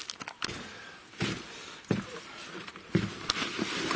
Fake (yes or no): yes